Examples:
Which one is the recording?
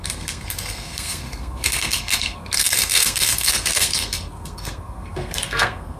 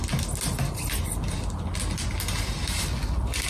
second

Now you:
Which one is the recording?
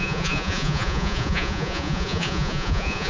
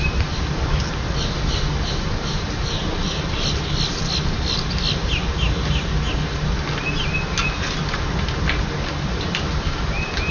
second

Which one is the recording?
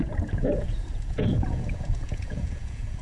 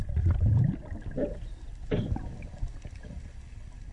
second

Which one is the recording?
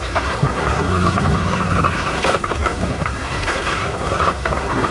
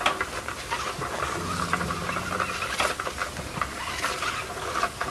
second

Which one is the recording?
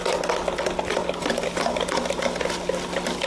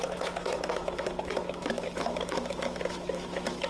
first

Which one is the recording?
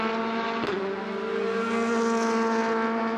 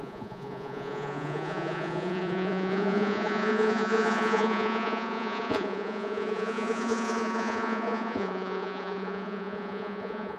first